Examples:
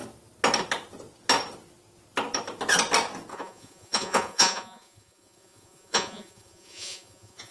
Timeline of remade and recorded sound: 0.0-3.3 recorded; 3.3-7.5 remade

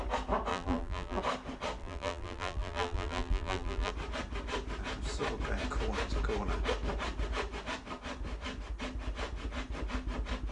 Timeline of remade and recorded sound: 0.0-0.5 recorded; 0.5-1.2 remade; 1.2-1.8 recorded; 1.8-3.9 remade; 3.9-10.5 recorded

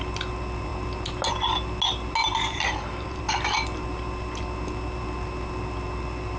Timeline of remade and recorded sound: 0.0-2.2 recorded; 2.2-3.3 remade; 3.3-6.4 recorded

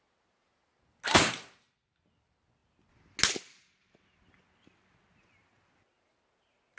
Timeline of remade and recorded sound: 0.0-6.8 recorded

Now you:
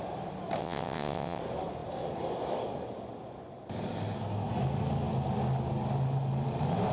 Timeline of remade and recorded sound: 0.0-0.6 recorded; 0.6-1.4 remade; 1.4-6.9 recorded